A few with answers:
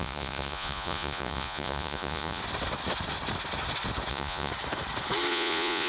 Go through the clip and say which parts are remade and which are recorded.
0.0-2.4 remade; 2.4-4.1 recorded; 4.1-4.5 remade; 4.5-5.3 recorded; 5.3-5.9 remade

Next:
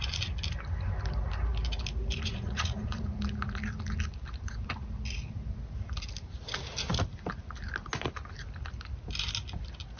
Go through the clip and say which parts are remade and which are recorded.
0.0-2.3 recorded; 2.3-3.0 remade; 3.0-10.0 recorded

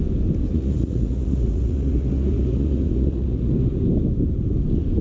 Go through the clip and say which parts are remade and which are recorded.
0.0-0.5 recorded; 0.5-3.5 remade; 3.5-5.0 recorded

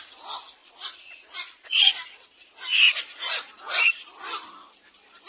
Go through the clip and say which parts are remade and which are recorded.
0.0-0.6 recorded; 0.6-1.9 remade; 1.9-5.3 recorded

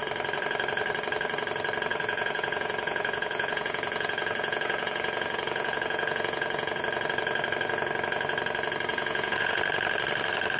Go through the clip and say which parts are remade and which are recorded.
0.0-1.9 recorded; 1.9-6.8 remade; 6.8-8.9 recorded; 8.9-9.6 remade; 9.6-10.6 recorded

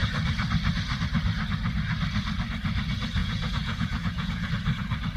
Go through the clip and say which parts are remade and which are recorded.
0.0-3.2 recorded; 3.2-4.5 remade; 4.5-5.2 recorded